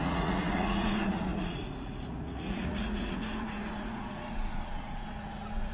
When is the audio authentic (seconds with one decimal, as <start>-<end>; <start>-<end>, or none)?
none